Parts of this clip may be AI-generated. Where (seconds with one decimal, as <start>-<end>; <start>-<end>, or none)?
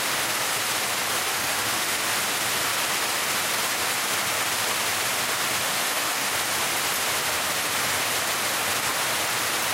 1.3-2.0; 5.6-6.3